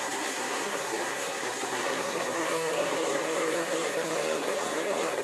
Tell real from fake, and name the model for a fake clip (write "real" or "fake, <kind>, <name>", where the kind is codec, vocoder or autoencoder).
fake, codec, SNAC